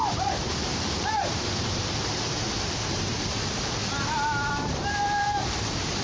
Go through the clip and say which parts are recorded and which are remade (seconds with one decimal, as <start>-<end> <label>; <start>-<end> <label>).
0.0-3.8 remade; 3.8-4.5 recorded; 4.5-6.0 remade